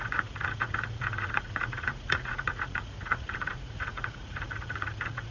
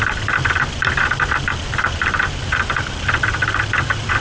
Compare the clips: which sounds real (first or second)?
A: second